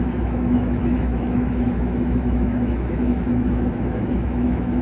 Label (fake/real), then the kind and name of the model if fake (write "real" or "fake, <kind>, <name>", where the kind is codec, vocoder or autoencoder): fake, autoencoder, DAC-VAE